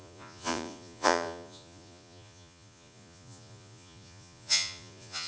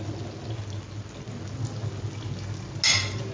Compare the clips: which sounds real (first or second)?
second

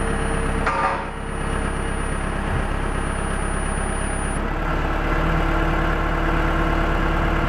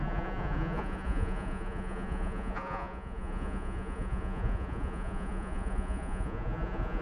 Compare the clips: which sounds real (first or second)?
first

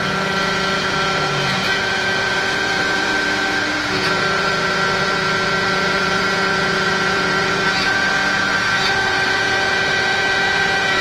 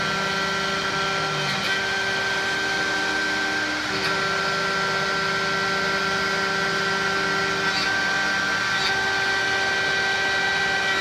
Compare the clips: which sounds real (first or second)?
second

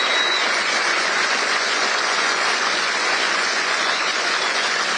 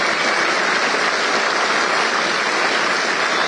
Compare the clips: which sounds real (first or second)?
second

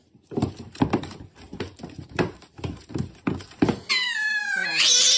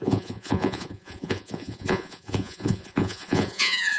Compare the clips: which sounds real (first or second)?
first